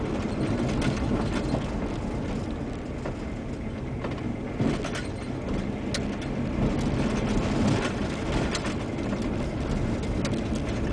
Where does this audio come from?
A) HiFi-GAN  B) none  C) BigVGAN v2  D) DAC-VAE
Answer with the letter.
B